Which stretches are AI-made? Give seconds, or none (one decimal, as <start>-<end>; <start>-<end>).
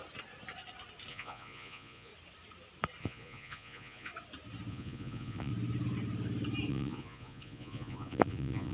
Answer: 1.1-2.1; 3.0-4.1; 4.7-5.5; 6.7-8.7